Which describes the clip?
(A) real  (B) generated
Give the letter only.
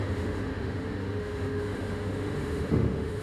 B